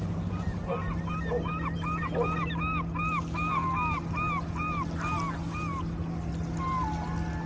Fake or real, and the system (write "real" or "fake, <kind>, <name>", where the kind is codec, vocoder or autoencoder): real